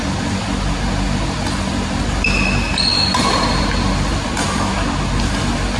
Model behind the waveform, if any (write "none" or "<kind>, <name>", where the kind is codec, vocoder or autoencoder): none